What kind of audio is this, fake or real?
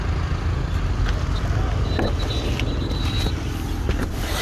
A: real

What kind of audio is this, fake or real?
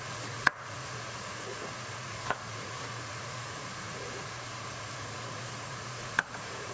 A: fake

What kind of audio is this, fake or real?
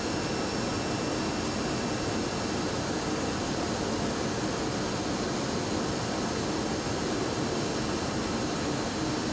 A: real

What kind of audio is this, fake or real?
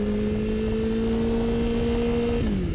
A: real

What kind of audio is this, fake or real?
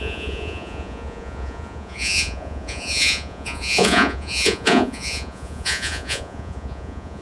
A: fake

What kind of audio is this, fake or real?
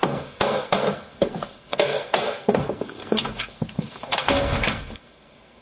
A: fake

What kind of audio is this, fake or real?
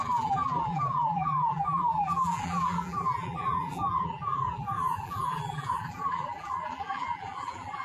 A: fake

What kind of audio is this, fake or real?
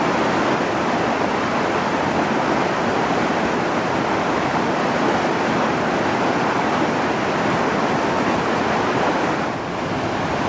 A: real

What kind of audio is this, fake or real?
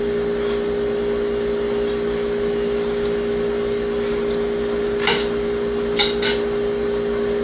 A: real